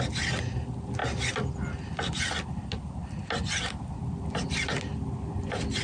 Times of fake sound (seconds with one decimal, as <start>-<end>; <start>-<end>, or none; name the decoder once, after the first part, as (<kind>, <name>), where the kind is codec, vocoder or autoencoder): none